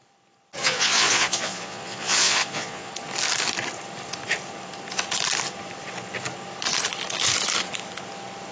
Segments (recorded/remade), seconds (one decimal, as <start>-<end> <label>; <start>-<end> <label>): 0.0-0.6 recorded; 0.6-2.9 remade; 2.9-8.5 recorded

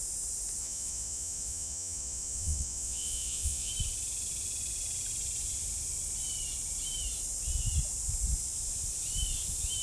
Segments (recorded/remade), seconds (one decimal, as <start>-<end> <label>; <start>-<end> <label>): 0.0-0.6 recorded; 0.6-3.7 remade; 3.7-9.8 recorded

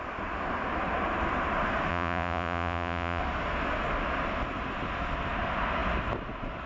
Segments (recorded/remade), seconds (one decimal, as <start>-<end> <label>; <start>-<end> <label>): 0.0-1.9 recorded; 1.9-3.2 remade; 3.2-6.7 recorded

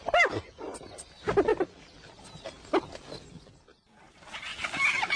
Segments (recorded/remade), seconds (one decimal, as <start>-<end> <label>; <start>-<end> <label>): 0.0-5.2 recorded